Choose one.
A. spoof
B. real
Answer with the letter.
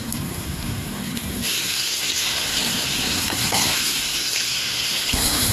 A